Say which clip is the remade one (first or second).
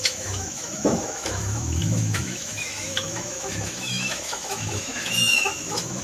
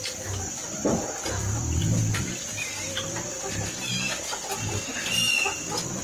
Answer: first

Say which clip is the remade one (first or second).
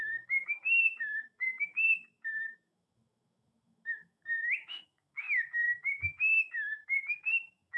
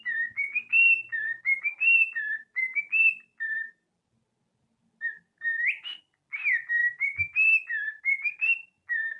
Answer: first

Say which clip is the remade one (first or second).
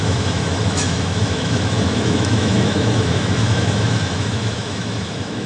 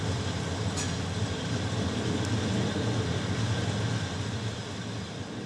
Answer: first